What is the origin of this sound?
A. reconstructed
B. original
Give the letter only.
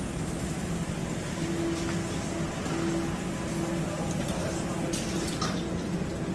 B